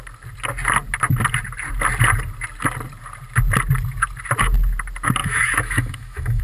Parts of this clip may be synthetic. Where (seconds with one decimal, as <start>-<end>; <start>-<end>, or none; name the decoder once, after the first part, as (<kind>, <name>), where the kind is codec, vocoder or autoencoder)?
5.2-6.4 (autoencoder, DAC-VAE)